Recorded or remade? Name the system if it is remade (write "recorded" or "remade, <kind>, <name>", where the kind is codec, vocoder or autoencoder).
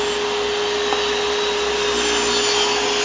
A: recorded